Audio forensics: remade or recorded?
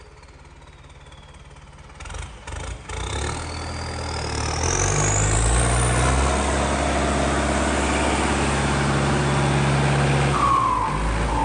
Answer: recorded